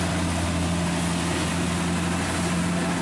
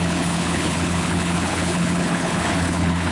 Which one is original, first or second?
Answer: first